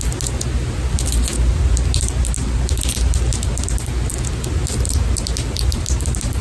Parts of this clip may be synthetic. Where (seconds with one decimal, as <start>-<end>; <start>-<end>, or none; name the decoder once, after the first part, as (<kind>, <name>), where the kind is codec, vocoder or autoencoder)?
none